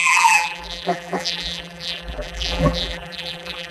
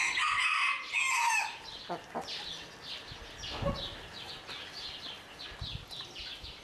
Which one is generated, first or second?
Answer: first